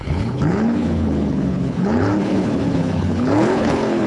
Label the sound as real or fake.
fake